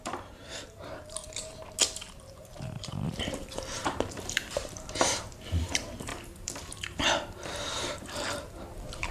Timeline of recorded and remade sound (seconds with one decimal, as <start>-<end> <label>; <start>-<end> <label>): 0.0-1.2 remade; 1.2-2.1 recorded; 2.1-9.1 remade